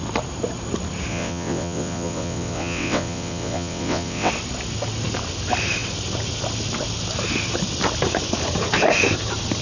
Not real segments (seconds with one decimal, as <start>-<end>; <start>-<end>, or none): 1.1-4.3